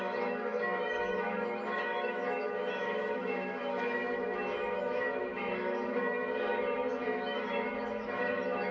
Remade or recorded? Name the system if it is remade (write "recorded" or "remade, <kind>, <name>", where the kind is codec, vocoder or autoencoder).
remade, autoencoder, DAC-VAE